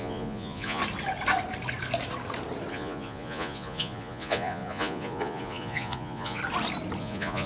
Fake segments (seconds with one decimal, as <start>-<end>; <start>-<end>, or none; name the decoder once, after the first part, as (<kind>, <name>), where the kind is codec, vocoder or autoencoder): 0.0-0.8 (vocoder, Vocos); 2.7-6.4; 7.0-7.5